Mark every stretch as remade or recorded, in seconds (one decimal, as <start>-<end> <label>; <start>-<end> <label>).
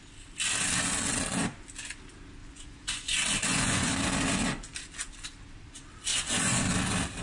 0.0-2.4 recorded; 2.4-3.9 remade; 3.9-6.1 recorded; 6.1-6.6 remade; 6.6-7.2 recorded